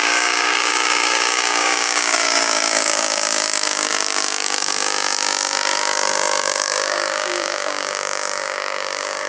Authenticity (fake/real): fake